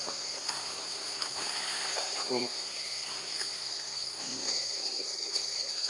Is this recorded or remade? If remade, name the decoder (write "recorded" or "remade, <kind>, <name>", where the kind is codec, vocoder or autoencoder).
remade, codec, SNAC